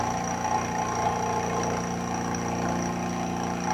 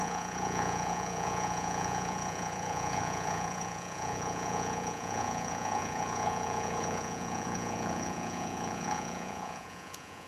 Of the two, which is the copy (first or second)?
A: second